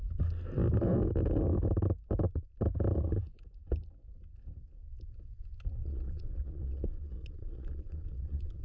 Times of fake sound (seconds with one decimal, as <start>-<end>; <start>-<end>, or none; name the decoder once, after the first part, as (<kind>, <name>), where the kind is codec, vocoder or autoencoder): 5.8-8.6 (vocoder, Vocos)